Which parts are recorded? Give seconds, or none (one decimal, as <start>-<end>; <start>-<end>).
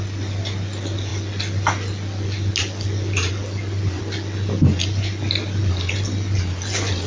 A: 0.0-7.1